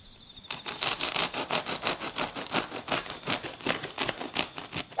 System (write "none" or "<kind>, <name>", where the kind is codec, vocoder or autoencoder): none